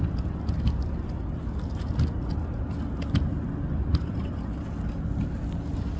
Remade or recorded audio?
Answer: recorded